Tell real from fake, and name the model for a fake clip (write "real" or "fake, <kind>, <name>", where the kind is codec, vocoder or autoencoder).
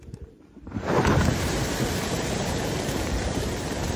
fake, vocoder, BigVGAN v2